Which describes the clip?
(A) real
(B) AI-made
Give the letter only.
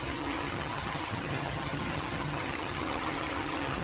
B